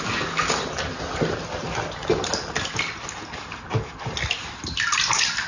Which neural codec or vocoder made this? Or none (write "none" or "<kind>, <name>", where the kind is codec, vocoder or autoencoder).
none